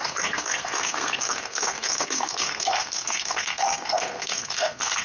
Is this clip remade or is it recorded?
remade